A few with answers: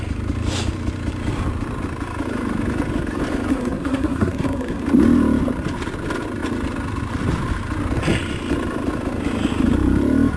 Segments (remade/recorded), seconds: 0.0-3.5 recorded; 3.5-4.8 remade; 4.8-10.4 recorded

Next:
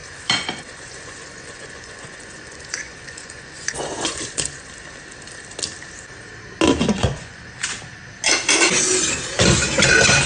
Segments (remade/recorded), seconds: 0.0-4.7 remade; 4.7-7.0 recorded; 7.0-7.6 remade; 7.6-10.3 recorded

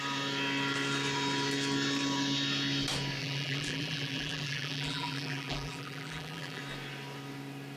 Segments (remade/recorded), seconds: 0.0-3.2 recorded; 3.2-6.6 remade; 6.6-7.8 recorded

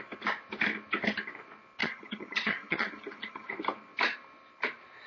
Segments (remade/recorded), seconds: 0.0-1.8 recorded; 1.8-3.5 remade; 3.5-5.1 recorded